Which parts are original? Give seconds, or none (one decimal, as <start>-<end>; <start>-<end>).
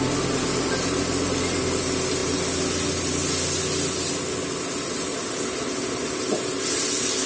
0.0-7.3